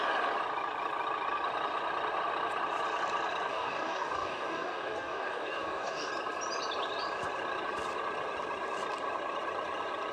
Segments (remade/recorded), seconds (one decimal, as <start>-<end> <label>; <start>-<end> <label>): 0.0-3.5 recorded; 3.5-6.1 remade; 6.1-10.1 recorded